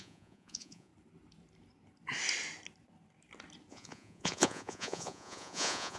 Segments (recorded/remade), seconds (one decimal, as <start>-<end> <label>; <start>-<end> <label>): 0.0-0.9 remade; 0.9-3.7 recorded; 3.7-6.0 remade